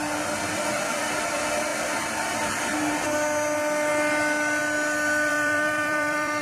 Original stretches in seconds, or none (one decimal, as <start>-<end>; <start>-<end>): 0.0-5.3

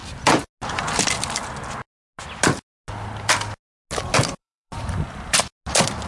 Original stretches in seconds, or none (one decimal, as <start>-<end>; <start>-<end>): 0.0-4.4; 5.4-6.1

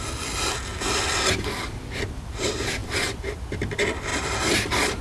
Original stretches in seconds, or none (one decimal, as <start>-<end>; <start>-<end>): 0.0-4.1

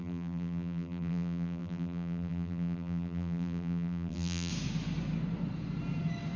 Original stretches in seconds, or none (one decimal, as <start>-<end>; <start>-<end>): 4.5-6.4